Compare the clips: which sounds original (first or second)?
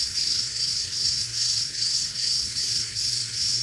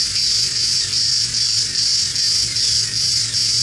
second